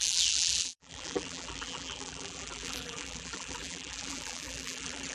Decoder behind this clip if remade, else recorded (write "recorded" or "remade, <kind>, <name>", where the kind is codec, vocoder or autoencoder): remade, vocoder, BigVGAN v2